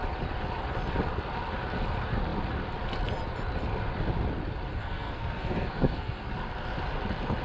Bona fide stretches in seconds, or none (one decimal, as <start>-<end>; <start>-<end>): 0.0-4.7; 6.3-7.4